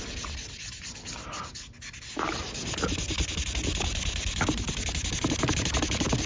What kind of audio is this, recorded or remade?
recorded